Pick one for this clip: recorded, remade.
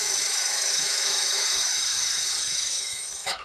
remade